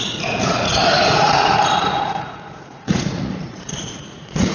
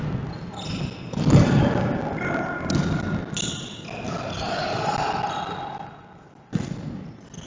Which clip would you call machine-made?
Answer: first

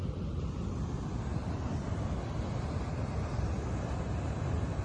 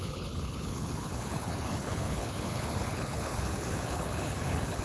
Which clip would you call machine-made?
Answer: second